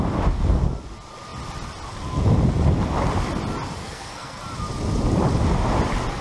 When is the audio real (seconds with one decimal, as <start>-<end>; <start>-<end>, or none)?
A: 0.0-3.8; 4.4-6.2